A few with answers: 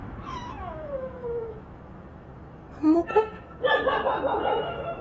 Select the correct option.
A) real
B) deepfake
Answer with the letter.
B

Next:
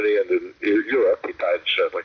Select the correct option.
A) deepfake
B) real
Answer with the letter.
B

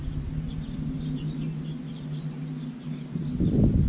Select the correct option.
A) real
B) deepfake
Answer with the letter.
A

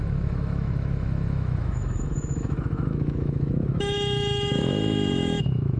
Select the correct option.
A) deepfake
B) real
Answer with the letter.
A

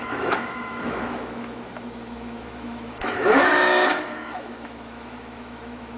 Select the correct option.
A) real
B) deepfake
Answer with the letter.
B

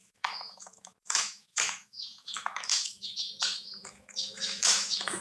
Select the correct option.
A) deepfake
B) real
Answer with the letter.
A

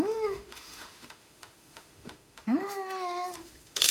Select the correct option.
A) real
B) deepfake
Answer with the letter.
B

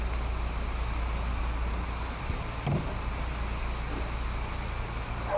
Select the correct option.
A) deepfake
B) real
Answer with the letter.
B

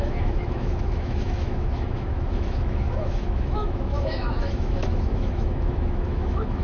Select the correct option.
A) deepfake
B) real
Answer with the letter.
A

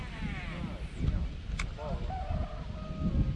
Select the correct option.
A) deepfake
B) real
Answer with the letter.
B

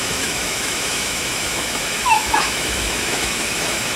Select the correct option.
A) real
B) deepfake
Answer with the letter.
B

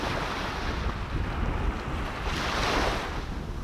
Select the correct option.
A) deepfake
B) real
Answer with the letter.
B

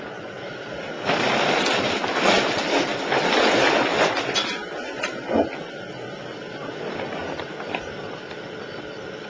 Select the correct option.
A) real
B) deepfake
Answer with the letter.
A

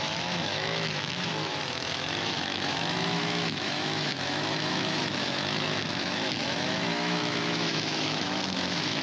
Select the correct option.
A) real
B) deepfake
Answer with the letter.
B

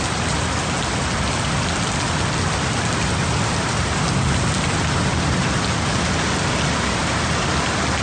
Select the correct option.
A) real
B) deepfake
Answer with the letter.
A